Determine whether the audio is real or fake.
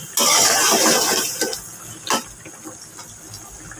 real